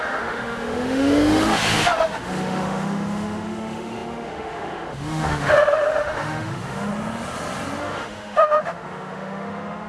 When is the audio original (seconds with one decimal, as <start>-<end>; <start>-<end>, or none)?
6.9-7.8